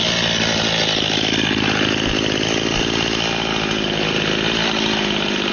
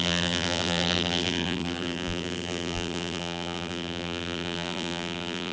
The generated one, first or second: second